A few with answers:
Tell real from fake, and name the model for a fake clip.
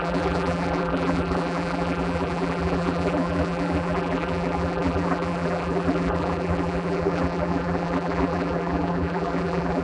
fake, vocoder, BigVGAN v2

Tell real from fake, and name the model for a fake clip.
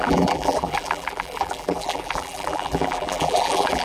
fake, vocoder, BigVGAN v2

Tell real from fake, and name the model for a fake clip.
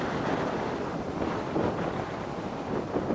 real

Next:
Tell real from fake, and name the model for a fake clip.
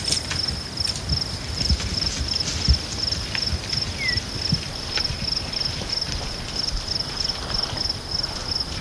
real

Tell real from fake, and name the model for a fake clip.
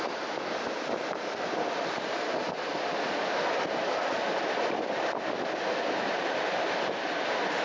real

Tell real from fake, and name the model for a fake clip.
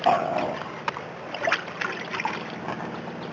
real